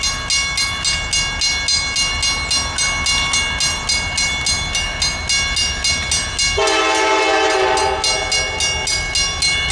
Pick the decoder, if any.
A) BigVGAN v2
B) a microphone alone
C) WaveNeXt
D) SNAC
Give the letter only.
B